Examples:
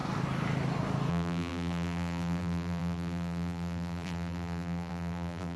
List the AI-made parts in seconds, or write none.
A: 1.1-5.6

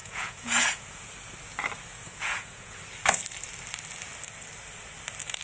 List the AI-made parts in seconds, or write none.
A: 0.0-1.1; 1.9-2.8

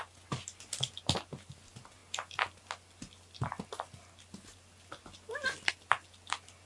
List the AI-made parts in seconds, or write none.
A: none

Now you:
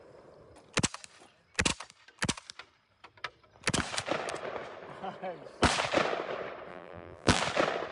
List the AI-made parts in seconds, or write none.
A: 6.7-7.4